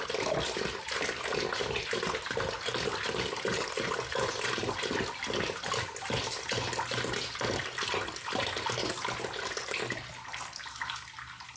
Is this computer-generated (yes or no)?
no